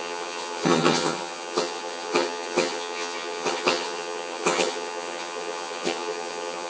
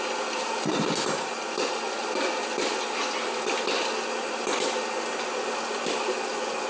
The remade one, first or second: first